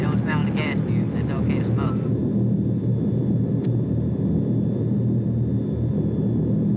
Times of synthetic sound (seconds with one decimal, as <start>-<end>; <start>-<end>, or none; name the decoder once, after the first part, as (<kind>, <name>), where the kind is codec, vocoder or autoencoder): none